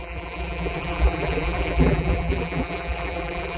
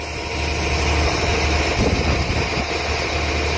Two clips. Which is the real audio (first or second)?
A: second